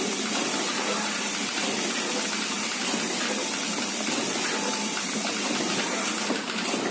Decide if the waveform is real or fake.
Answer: fake